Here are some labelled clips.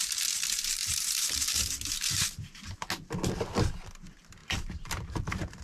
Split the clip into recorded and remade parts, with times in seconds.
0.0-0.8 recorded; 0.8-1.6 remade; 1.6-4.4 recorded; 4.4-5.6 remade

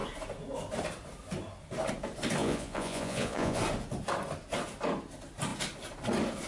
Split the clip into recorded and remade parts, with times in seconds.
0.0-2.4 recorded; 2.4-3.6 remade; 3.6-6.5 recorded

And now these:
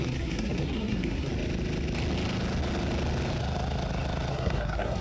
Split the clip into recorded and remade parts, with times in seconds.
0.0-1.3 remade; 1.3-4.3 recorded; 4.3-5.0 remade

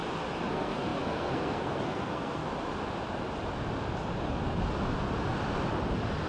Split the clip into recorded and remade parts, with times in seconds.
0.0-0.5 recorded; 0.5-2.4 remade; 2.4-6.3 recorded

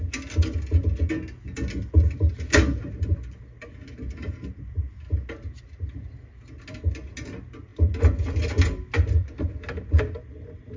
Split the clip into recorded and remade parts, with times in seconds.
0.0-10.8 recorded

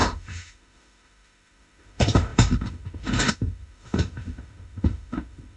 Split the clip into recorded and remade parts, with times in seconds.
0.0-5.6 remade

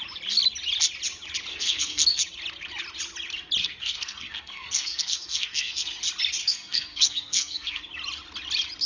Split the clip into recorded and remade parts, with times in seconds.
0.0-1.5 recorded; 1.5-2.2 remade; 2.2-3.6 recorded; 3.6-6.0 remade; 6.0-6.4 recorded; 6.4-7.9 remade; 7.9-8.9 recorded